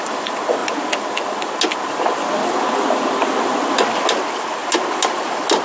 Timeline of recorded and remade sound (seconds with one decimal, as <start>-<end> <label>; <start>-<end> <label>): 0.0-5.6 recorded

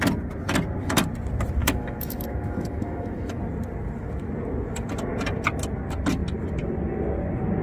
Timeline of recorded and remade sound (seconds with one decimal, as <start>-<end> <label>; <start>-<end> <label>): 0.0-1.6 recorded; 1.6-3.4 remade; 3.4-7.6 recorded